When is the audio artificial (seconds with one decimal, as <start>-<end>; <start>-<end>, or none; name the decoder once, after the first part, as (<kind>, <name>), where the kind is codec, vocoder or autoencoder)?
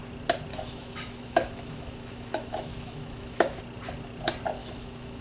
0.5-3.6 (autoencoder, DAC-VAE); 4.6-5.2